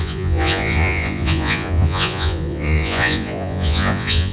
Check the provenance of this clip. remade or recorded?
remade